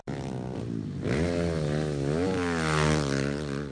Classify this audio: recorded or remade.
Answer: recorded